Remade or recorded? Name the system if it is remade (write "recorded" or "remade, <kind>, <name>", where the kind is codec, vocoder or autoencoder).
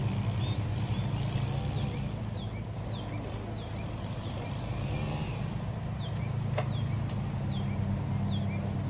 recorded